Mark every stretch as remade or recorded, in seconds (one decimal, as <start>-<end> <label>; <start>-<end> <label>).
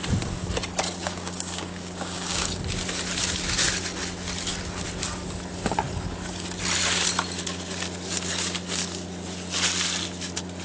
0.0-1.0 recorded; 1.0-2.5 remade; 2.5-10.6 recorded